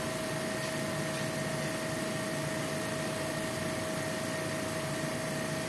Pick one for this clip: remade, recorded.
recorded